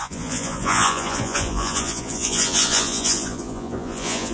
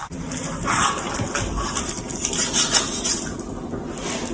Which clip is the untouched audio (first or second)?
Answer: second